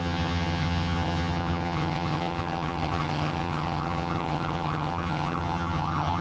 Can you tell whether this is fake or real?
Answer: fake